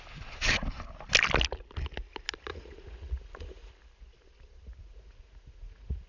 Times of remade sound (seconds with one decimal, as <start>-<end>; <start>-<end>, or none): 2.5-3.7; 4.8-6.1